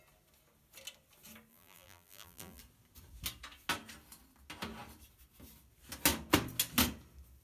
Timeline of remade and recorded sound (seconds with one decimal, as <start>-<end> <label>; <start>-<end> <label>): 0.0-1.5 recorded; 1.5-2.6 remade; 2.6-7.4 recorded